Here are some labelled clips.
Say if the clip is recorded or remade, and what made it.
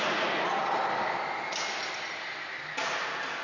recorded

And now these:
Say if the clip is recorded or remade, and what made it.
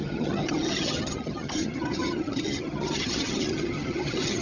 remade, vocoder, HiFi-GAN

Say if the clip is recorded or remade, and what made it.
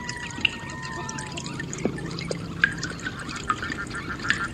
recorded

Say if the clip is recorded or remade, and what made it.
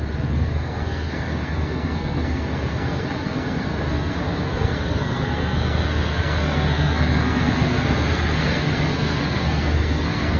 remade, codec, SNAC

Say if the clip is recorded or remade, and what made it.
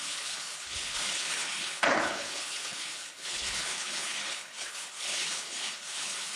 remade, codec, HILCodec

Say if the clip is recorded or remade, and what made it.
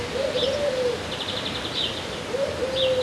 recorded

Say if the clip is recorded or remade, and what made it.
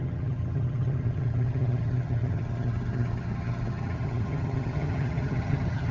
remade, vocoder, HiFi-GAN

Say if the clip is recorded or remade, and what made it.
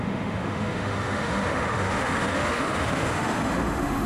remade, autoencoder, DAC-VAE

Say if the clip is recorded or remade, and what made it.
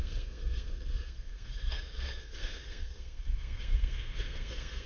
remade, codec, SNAC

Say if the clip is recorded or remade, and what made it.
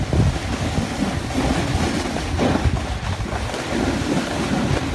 recorded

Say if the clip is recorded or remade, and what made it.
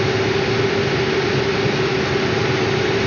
recorded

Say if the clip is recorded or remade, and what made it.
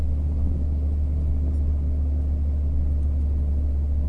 recorded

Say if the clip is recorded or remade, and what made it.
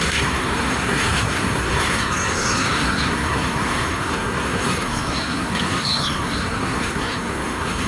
remade, codec, SNAC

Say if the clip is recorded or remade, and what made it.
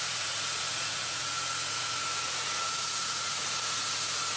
remade, vocoder, Vocos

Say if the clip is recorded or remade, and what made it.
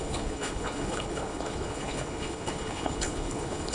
remade, codec, HILCodec